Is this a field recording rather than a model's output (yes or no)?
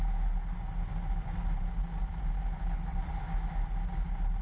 yes